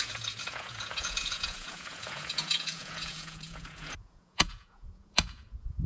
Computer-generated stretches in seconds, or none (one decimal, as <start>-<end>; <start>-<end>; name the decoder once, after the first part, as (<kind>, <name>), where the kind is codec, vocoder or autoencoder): 0.0-5.9 (vocoder, Vocos)